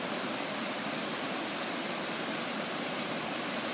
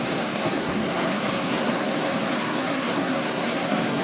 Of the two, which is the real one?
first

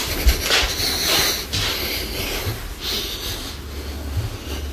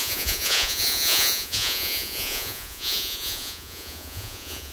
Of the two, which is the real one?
first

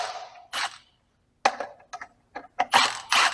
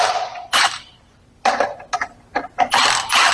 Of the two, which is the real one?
first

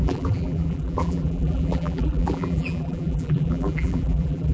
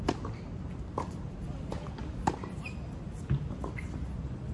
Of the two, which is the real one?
second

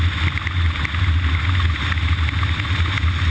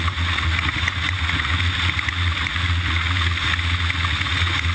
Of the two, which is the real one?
first